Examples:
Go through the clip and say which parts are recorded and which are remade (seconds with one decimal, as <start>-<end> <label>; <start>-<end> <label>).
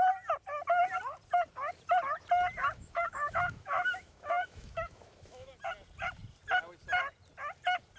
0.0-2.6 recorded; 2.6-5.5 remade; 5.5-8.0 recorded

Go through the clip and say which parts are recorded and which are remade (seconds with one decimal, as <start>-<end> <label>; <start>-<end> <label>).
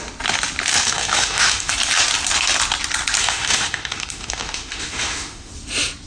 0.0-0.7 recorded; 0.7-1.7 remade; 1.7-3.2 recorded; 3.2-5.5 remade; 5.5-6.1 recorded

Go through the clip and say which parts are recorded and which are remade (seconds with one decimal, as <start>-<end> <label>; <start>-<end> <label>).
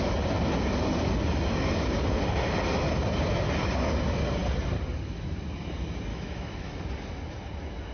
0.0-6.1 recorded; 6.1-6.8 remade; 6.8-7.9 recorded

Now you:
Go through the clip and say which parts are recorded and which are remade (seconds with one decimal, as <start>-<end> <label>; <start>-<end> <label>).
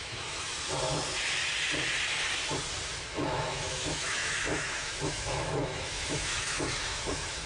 0.0-0.5 remade; 0.5-2.9 recorded; 2.9-7.5 remade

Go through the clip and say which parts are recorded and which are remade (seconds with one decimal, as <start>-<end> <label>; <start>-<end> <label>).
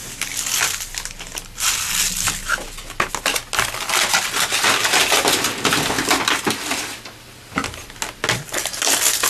0.0-9.3 recorded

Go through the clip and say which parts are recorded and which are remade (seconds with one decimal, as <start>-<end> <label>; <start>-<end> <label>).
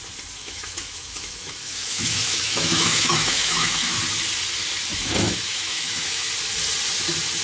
0.0-0.4 recorded; 0.4-4.0 remade; 4.0-4.9 recorded; 4.9-6.3 remade; 6.3-7.4 recorded